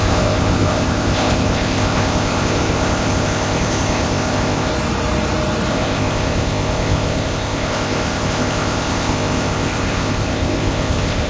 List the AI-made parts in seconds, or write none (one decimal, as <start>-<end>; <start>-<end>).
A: 0.0-4.7; 5.7-11.3